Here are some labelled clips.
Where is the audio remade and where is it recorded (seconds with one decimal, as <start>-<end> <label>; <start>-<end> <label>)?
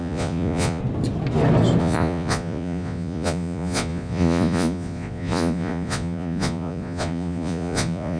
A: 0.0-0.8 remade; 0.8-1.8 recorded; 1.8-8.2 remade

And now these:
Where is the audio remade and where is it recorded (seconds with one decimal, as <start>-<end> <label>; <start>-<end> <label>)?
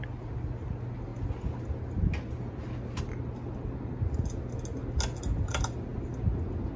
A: 0.0-6.8 recorded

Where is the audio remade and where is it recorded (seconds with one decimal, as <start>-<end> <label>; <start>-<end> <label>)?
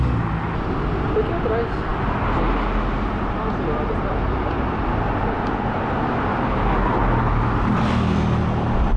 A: 0.0-9.0 recorded